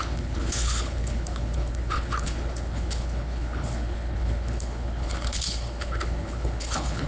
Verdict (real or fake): fake